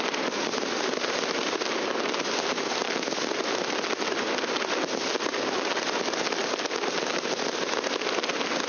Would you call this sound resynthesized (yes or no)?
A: no